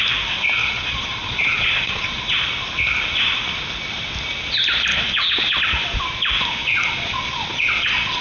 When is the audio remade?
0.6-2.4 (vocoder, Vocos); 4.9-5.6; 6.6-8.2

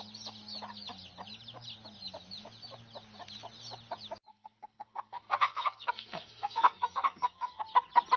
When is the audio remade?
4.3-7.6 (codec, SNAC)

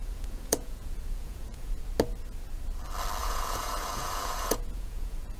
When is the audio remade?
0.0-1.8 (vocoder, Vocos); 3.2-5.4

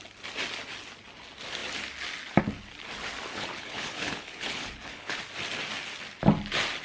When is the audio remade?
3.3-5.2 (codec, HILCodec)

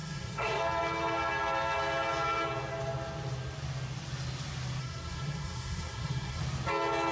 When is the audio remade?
0.0-0.6 (codec, SNAC); 4.8-6.4

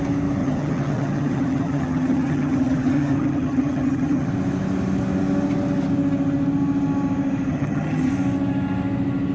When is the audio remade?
0.4-4.3 (vocoder, HiFi-GAN); 7.5-8.1

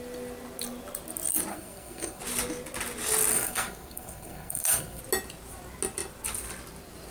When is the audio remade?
1.5-2.2 (codec, SNAC); 3.3-5.0

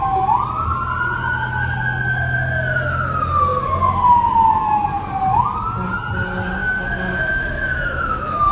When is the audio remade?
6.6-8.5 (autoencoder, DAC-VAE)